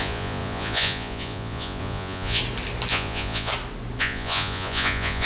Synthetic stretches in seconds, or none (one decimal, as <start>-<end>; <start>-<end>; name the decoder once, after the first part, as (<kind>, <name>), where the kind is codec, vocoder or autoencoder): 0.0-2.4 (vocoder, Vocos); 2.9-3.5; 4.0-5.3